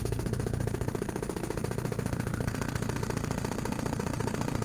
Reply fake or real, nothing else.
fake